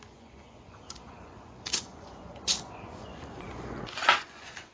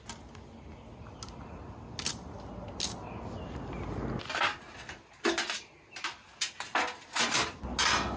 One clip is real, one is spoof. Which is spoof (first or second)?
first